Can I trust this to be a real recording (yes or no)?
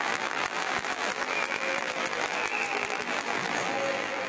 no